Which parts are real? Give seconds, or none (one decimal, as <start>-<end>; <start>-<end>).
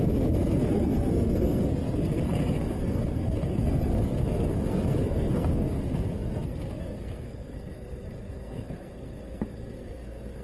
none